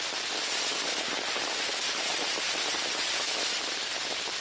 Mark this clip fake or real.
real